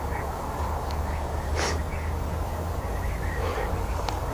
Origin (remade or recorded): remade